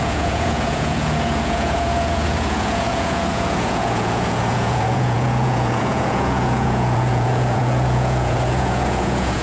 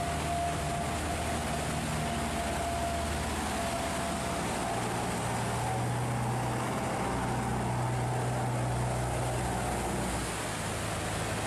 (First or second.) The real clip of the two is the second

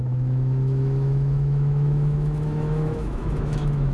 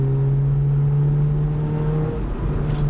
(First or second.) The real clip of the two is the second